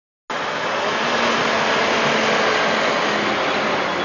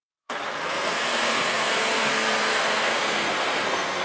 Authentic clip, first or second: first